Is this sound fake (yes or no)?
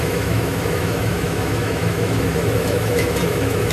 yes